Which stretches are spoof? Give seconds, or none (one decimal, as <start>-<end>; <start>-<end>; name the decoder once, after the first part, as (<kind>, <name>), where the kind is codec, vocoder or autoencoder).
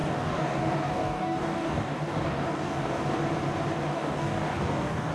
0.0-3.1 (codec, DAC); 3.9-5.1